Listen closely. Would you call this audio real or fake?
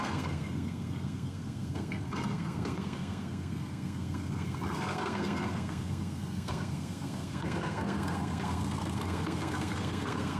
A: fake